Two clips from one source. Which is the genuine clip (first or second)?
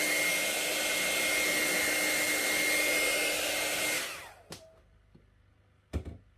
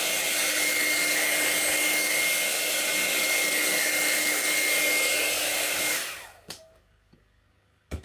first